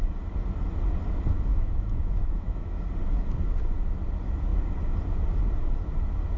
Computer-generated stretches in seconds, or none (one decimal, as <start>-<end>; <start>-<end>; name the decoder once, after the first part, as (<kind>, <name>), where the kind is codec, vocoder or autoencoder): 1.5-2.8 (autoencoder, DAC-VAE)